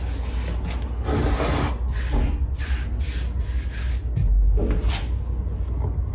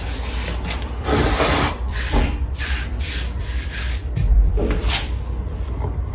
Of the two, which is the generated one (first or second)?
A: second